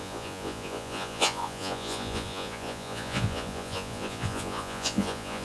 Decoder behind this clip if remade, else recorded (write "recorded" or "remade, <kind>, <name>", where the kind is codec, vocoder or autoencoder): remade, vocoder, Vocos